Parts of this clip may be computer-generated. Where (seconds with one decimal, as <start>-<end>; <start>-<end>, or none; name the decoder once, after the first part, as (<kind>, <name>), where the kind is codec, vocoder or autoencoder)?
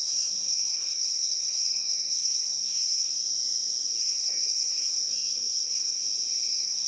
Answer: 0.0-3.1 (codec, SNAC); 4.0-6.0; 6.5-6.9